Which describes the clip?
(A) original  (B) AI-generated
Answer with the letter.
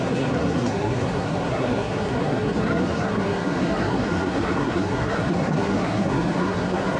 B